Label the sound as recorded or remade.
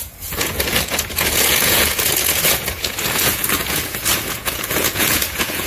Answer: remade